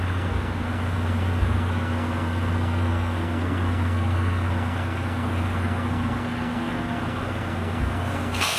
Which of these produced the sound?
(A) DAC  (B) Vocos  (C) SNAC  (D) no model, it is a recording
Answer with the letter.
C